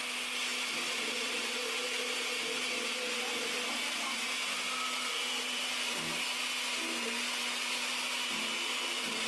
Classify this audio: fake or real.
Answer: real